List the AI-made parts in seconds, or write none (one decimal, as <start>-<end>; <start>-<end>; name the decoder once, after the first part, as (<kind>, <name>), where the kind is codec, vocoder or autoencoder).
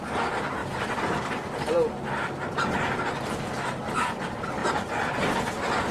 0.6-1.3 (vocoder, BigVGAN v2); 4.6-5.1